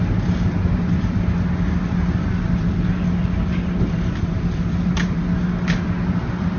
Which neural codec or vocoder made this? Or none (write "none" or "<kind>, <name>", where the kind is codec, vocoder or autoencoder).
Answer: none